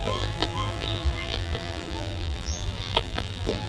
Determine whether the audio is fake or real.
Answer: fake